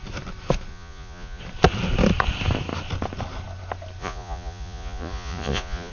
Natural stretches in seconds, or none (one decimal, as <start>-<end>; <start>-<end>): 0.0-0.7; 1.4-4.0